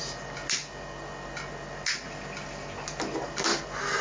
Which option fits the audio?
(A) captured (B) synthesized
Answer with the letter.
A